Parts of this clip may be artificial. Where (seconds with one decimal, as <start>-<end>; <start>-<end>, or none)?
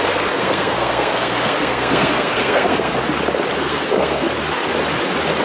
0.4-2.9; 3.6-4.3